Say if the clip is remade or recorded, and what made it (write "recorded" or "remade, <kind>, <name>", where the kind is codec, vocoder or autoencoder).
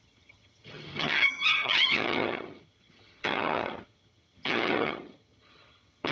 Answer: remade, vocoder, HiFi-GAN